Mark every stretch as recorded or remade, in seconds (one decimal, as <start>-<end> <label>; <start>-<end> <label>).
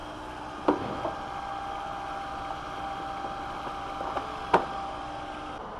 0.0-5.8 recorded